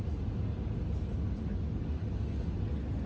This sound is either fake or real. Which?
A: real